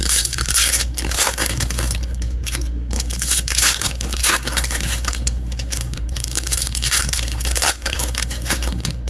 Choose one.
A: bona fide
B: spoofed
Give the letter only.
B